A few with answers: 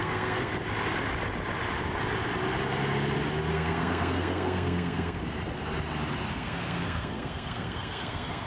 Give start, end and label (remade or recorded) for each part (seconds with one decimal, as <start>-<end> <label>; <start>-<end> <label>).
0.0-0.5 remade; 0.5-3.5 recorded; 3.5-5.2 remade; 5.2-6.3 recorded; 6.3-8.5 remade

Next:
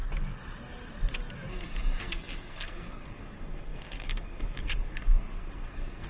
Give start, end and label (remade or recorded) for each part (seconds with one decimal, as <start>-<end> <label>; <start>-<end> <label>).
0.0-2.0 recorded; 2.0-6.1 remade

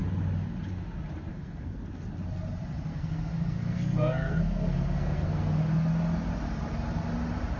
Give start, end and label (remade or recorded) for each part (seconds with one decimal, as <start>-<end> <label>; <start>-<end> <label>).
0.0-1.3 recorded; 1.3-1.8 remade; 1.8-2.9 recorded; 2.9-5.6 remade; 5.6-7.6 recorded

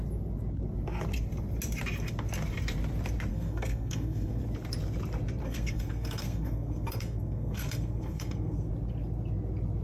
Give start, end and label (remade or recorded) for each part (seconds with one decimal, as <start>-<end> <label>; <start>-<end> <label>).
0.0-3.3 recorded; 3.3-4.4 remade; 4.4-5.4 recorded; 5.4-8.7 remade; 8.7-9.8 recorded

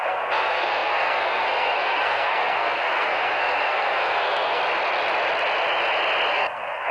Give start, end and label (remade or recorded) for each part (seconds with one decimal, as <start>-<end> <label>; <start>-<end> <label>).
0.0-4.6 remade; 4.6-6.3 recorded; 6.3-6.9 remade